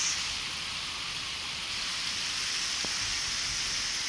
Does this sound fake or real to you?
real